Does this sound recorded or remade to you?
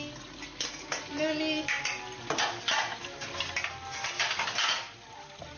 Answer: recorded